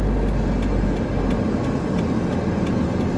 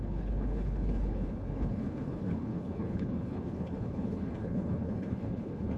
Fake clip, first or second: second